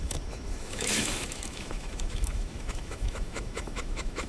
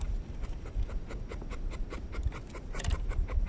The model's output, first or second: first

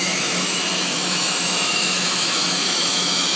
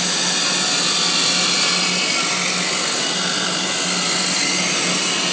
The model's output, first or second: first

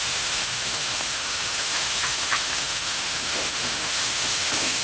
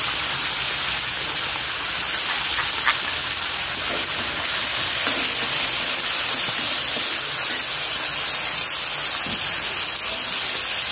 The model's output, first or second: first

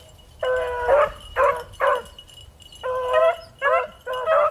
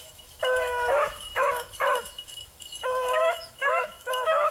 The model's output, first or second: second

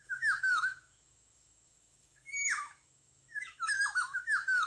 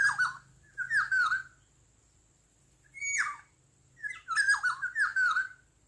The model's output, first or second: first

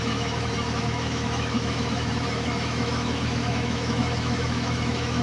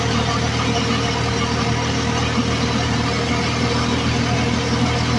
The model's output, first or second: first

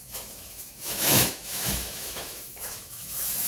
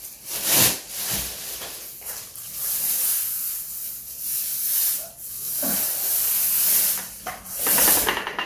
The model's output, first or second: first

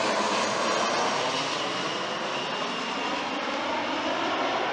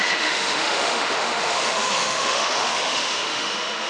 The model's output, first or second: second